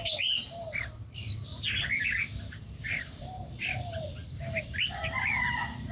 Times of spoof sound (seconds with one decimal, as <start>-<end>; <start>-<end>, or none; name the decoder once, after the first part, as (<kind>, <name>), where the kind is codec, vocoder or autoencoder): 0.0-1.5 (vocoder, BigVGAN v2); 2.6-5.9